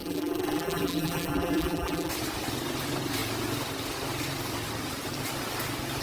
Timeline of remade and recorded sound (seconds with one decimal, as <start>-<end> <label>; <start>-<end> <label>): 0.0-2.1 remade; 2.1-6.0 recorded